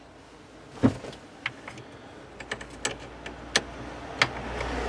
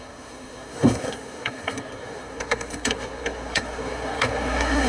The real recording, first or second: first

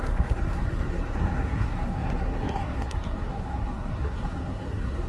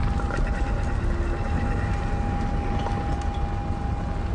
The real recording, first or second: second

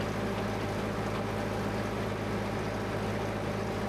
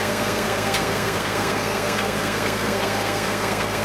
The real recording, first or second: first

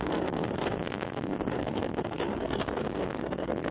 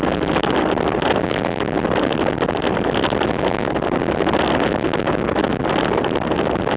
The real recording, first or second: second